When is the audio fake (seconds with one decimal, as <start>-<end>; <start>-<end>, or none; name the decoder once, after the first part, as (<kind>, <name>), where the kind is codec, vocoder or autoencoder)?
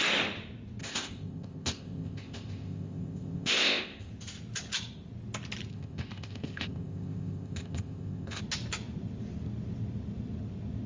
0.8-4.1 (codec, ZipCodec); 5.7-8.4